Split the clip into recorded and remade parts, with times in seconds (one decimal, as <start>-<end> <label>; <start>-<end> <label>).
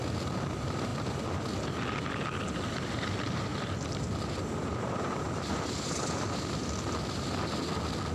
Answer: 0.0-3.5 recorded; 3.5-5.7 remade; 5.7-8.1 recorded